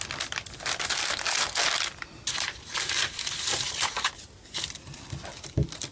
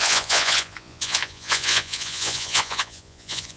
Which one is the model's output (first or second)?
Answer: second